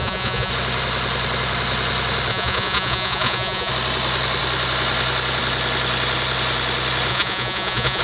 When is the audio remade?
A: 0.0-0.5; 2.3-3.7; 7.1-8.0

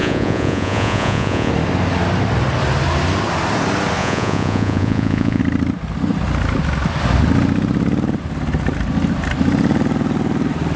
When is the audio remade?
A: 0.0-1.5; 4.0-5.4

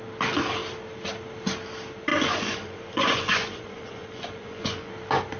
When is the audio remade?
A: 2.1-4.9

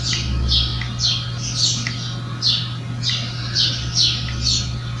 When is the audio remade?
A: none

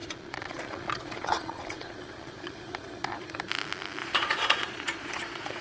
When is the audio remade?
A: 0.0-3.4; 4.0-5.6